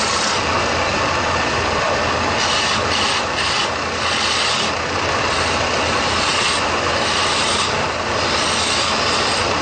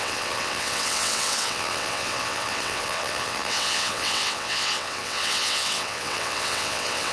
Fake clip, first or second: second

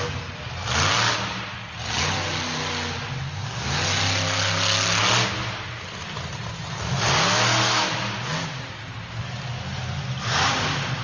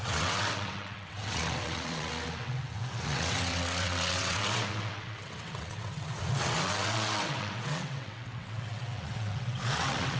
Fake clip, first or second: second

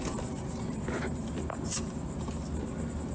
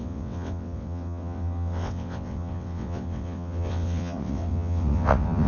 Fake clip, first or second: second